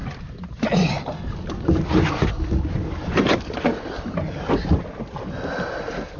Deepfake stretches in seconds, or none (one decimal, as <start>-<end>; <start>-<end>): none